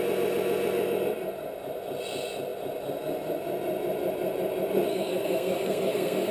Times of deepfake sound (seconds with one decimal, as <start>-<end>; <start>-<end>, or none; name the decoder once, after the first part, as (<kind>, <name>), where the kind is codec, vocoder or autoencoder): 4.9-6.3 (codec, SNAC)